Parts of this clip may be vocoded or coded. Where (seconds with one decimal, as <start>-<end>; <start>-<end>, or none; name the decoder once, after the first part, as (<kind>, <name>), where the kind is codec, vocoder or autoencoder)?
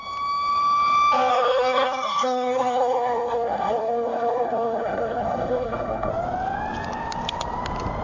1.3-6.1 (codec, SNAC)